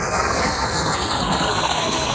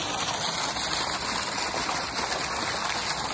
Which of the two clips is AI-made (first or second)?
first